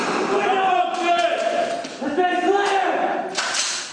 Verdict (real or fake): fake